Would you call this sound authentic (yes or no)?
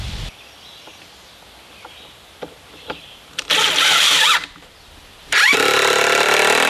yes